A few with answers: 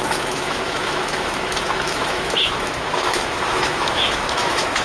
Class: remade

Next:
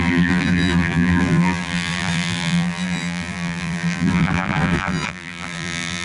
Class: remade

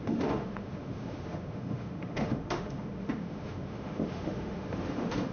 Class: remade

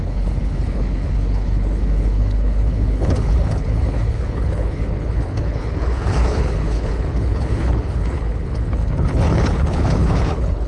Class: remade